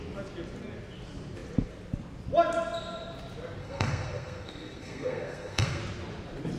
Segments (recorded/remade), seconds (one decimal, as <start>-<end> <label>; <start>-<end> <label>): 0.0-3.6 recorded; 3.6-5.8 remade; 5.8-6.6 recorded